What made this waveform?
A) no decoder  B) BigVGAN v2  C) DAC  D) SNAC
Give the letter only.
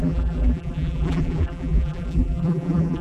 B